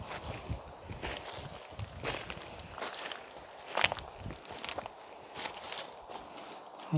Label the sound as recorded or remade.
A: recorded